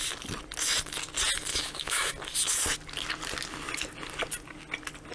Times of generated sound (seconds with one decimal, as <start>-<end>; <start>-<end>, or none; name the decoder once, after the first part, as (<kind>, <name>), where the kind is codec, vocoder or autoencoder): 1.5-2.1 (autoencoder, DAC-VAE)